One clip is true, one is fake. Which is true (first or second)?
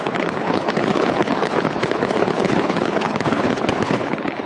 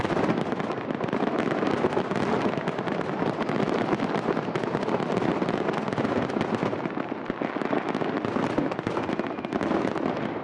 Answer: second